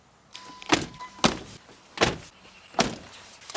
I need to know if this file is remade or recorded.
recorded